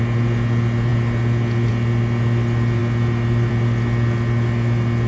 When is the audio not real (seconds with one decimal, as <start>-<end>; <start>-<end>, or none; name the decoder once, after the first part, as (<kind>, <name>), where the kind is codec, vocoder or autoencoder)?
none